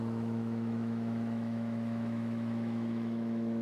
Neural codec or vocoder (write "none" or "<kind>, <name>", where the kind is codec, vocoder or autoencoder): autoencoder, DAC-VAE